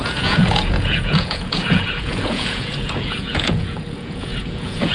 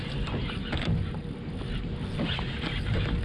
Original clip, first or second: second